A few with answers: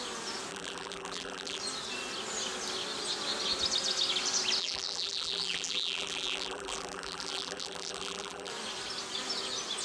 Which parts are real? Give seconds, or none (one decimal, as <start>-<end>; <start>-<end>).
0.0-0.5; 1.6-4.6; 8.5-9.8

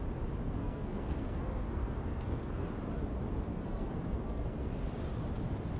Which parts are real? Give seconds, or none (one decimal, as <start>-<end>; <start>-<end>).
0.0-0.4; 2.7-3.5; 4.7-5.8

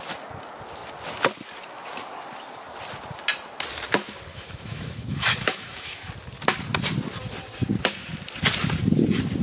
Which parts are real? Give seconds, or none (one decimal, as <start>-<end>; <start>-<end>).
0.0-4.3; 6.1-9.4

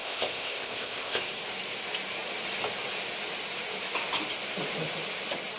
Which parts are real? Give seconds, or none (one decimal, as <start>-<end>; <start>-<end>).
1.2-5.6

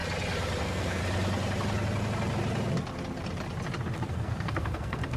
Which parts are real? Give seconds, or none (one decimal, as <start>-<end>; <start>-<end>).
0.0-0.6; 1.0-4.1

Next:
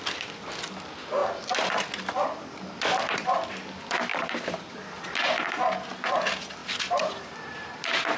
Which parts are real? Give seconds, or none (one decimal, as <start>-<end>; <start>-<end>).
0.0-4.1; 5.1-6.6

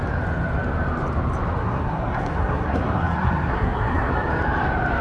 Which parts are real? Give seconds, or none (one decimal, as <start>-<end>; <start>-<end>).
0.0-1.6; 4.1-5.0